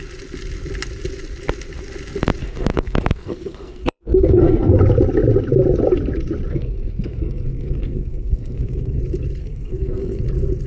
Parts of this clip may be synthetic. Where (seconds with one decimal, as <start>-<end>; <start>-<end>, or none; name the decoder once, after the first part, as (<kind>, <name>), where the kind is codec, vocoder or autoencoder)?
2.4-4.8 (codec, SNAC); 6.5-9.0; 9.4-10.2